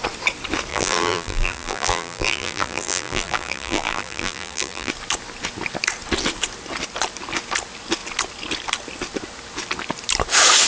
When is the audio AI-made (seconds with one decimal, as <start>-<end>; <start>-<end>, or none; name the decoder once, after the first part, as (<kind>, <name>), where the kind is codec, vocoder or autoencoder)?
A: 0.7-4.9 (vocoder, BigVGAN v2)